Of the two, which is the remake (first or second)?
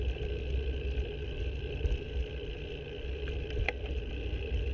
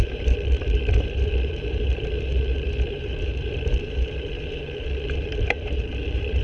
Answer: second